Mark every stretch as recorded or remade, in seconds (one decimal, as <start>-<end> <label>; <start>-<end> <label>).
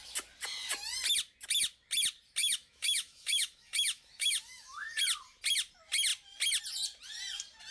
0.0-2.4 recorded; 2.4-5.0 remade; 5.0-7.7 recorded